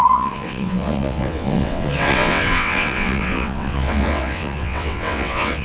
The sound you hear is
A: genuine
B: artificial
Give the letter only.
B